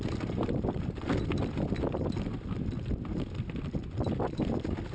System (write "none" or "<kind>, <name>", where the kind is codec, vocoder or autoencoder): none